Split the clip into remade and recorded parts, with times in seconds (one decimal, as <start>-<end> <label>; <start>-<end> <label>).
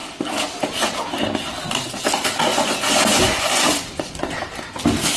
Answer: 0.0-2.5 recorded; 2.5-4.1 remade; 4.1-5.2 recorded